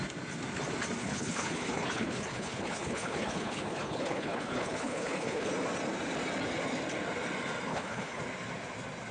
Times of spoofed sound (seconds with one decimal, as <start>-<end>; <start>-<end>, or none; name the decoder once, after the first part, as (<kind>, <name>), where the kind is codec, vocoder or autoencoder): 1.0-5.5 (codec, HILCodec); 7.7-8.2